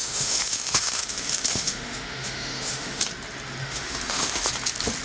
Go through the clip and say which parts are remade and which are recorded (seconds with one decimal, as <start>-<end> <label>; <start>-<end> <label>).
0.0-3.0 remade; 3.0-3.6 recorded; 3.6-4.5 remade; 4.5-5.0 recorded